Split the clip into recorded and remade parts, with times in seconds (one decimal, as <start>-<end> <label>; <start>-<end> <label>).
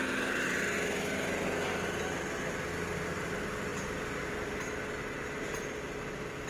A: 0.0-6.5 recorded